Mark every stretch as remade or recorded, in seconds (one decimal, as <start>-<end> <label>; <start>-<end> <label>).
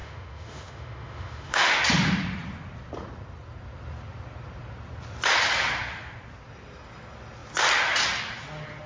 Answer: 0.0-1.8 remade; 1.8-8.9 recorded